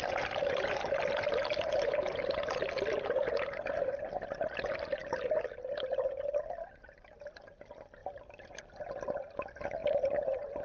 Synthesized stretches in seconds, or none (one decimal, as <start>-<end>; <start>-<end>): 8.0-8.6; 9.8-10.6